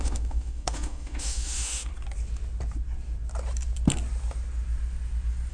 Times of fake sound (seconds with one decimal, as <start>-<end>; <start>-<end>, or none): 0.0-1.9